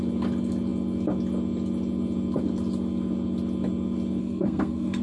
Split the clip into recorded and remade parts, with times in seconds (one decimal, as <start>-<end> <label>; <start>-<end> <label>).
0.0-4.2 recorded; 4.2-5.0 remade

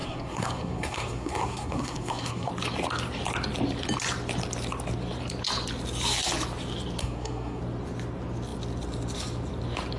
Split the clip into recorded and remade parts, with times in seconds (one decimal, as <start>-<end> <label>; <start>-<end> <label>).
0.0-2.5 remade; 2.5-7.0 recorded; 7.0-7.6 remade; 7.6-10.0 recorded